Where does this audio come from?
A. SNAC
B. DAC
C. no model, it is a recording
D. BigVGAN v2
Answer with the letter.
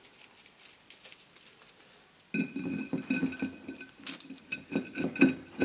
C